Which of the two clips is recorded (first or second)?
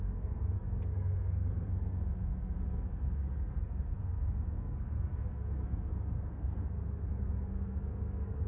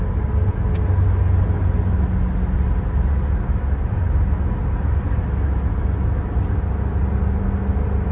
second